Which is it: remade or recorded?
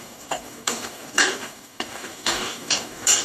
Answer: remade